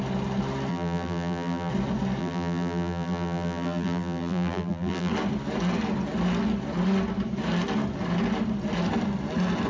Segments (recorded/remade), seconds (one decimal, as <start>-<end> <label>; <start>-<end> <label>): 0.0-0.7 recorded; 0.7-1.7 remade; 1.7-2.2 recorded; 2.2-5.1 remade; 5.1-9.7 recorded